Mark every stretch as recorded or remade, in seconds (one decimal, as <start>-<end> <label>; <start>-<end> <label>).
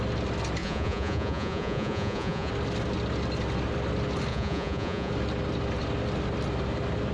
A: 0.0-0.6 recorded; 0.6-2.5 remade; 2.5-4.3 recorded; 4.3-5.1 remade; 5.1-7.1 recorded